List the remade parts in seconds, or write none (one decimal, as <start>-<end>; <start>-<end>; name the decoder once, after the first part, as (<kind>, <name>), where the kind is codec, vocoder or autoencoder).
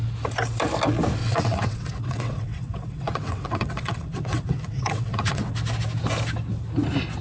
1.2-5.5 (vocoder, WaveNeXt)